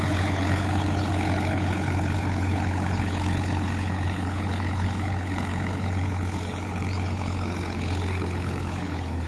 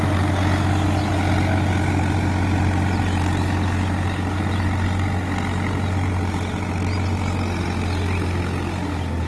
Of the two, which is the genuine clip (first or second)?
second